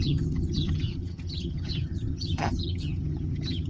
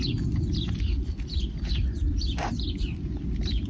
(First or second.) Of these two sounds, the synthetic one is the first